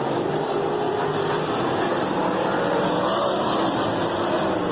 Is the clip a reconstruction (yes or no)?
no